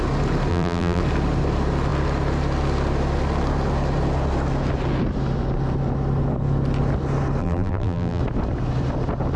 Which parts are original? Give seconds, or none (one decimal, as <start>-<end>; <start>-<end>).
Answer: 0.0-0.5; 1.0-7.4; 8.2-9.4